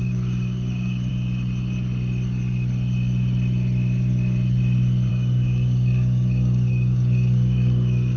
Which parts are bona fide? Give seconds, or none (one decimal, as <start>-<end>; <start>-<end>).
1.1-5.1